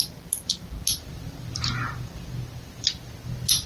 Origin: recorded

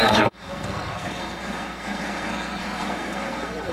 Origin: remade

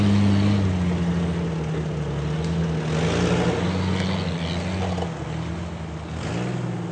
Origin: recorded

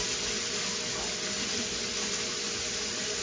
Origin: recorded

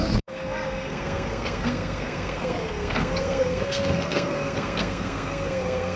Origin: remade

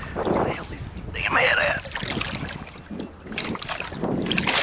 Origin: recorded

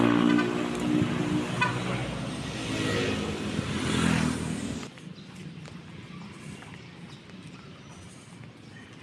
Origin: recorded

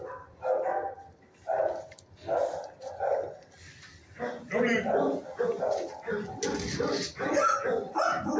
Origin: recorded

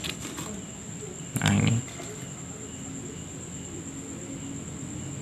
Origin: recorded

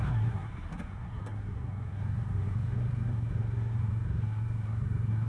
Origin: remade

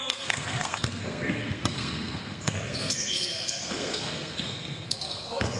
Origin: remade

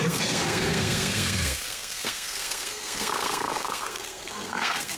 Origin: remade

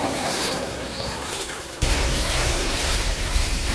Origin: remade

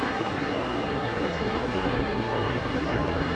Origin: remade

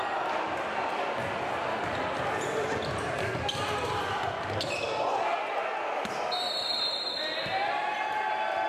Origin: recorded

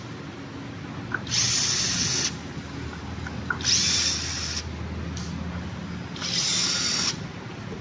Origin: recorded